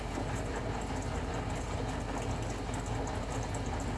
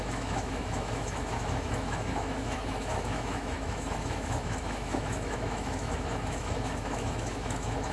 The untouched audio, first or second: first